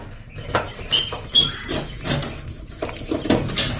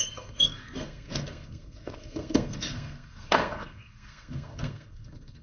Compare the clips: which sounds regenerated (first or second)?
second